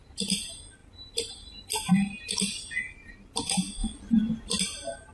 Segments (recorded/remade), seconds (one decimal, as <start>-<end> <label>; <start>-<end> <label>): 0.0-5.1 recorded